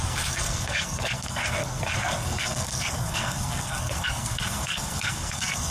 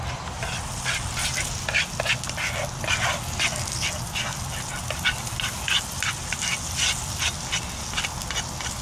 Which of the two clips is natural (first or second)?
second